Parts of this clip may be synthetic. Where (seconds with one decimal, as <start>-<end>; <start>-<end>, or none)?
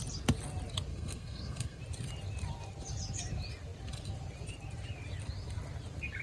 0.9-1.8